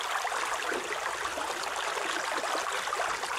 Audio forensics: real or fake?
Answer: real